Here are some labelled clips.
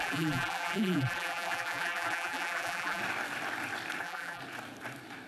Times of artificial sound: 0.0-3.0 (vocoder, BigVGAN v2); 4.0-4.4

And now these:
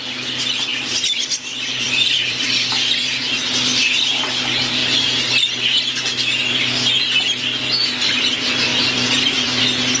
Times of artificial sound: 0.7-2.7 (vocoder, BigVGAN v2); 8.7-9.6

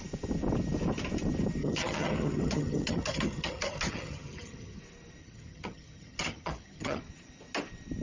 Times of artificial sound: 1.6-4.8 (vocoder, HiFi-GAN); 5.2-7.0

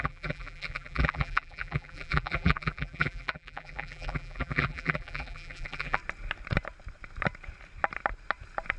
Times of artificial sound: 0.0-6.0 (vocoder, BigVGAN v2)

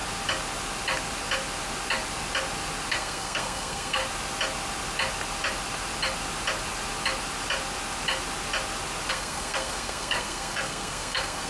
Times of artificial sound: 2.9-4.0 (codec, SNAC); 9.1-11.5